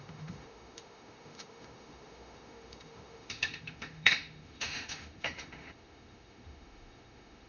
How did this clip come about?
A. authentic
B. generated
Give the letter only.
B